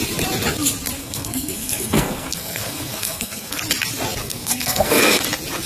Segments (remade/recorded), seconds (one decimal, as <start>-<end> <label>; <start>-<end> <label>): 0.0-1.0 recorded; 1.0-3.6 remade; 3.6-4.2 recorded; 4.2-5.2 remade; 5.2-5.7 recorded